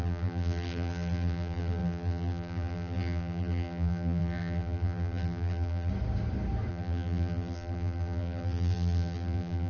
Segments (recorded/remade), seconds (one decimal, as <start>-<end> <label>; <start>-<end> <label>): 0.0-5.9 remade; 5.9-6.7 recorded; 6.7-9.7 remade